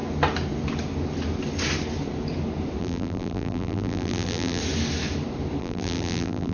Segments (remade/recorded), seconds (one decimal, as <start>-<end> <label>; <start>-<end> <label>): 0.0-2.8 recorded; 2.8-4.6 remade; 4.6-5.6 recorded; 5.6-6.5 remade